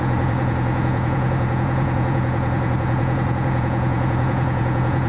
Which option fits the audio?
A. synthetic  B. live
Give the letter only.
A